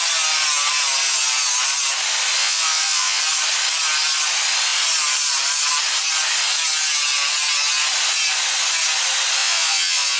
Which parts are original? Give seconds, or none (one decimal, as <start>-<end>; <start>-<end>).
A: 0.0-2.4; 3.2-9.4